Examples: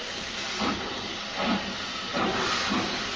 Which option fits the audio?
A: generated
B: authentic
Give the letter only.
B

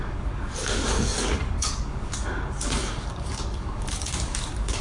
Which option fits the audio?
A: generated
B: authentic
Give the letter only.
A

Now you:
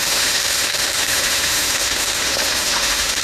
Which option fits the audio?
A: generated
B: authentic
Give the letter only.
A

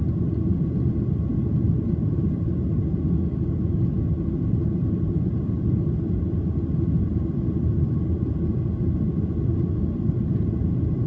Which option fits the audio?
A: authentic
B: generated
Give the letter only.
A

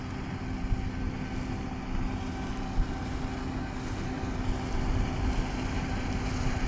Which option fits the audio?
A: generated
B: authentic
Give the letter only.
B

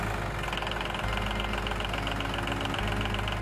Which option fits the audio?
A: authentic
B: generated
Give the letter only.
A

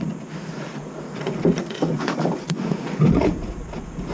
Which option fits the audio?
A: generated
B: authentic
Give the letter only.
A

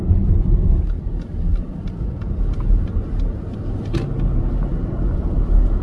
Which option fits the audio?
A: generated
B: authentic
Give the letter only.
B